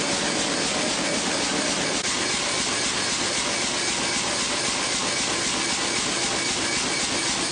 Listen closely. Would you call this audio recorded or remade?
recorded